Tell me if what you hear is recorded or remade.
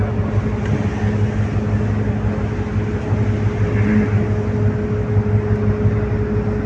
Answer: recorded